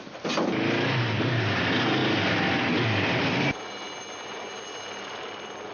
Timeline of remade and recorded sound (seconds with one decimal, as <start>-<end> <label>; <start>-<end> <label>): 0.0-5.7 recorded